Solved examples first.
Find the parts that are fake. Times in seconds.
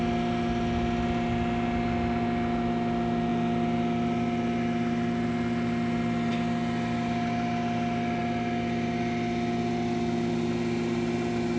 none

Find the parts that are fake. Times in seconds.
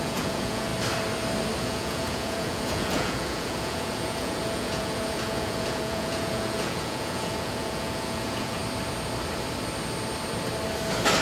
0.0-0.7 (vocoder, Vocos); 1.6-8.6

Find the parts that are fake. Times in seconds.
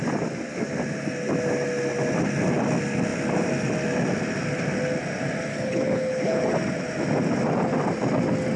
5.5-6.5 (codec, HILCodec)